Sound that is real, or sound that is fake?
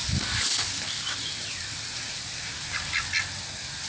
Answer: real